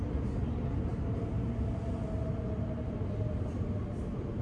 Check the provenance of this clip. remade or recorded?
recorded